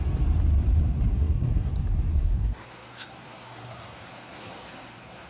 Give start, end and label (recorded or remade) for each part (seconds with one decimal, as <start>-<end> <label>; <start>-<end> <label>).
0.0-1.1 recorded; 1.1-1.7 remade; 1.7-2.1 recorded; 2.1-5.3 remade